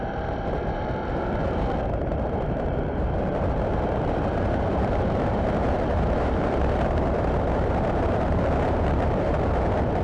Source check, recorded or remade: remade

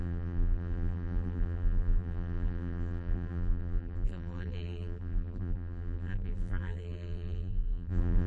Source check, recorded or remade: remade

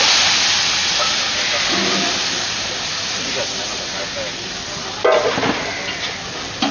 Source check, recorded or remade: recorded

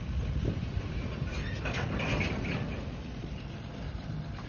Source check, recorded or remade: remade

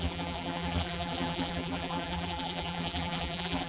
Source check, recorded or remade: remade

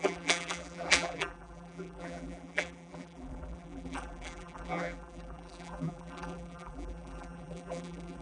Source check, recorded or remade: remade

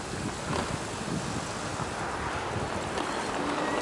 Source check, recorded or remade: recorded